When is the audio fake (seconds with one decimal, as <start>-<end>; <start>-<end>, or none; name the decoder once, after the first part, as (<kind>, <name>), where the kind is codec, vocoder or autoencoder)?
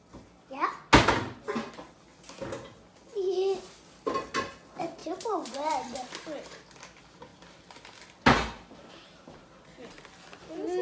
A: 5.0-6.1 (vocoder, BigVGAN v2)